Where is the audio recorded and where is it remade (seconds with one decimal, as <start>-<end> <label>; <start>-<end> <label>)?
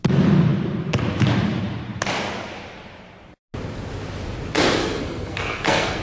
0.0-4.8 recorded; 4.8-6.0 remade